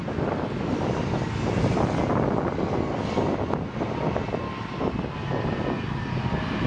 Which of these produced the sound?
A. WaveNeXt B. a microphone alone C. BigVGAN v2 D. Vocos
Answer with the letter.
B